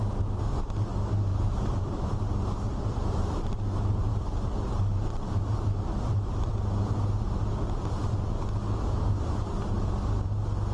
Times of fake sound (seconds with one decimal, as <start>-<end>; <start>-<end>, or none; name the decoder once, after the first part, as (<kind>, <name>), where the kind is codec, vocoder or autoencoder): 1.3-2.0 (vocoder, BigVGAN v2); 2.7-6.5